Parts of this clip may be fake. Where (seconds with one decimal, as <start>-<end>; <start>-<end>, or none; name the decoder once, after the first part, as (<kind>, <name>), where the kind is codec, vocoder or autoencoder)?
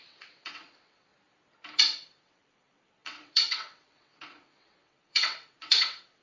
0.0-1.1 (vocoder, WaveNeXt); 1.8-6.2